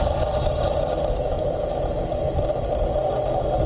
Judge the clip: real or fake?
real